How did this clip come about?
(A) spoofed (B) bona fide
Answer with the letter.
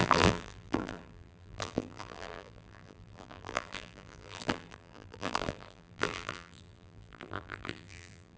A